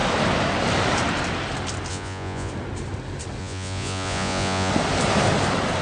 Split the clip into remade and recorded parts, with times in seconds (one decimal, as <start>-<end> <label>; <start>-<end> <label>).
0.0-1.9 recorded; 1.9-2.5 remade; 2.5-3.4 recorded; 3.4-4.7 remade; 4.7-5.8 recorded